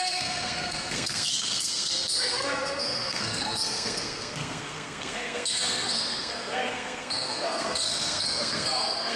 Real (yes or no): no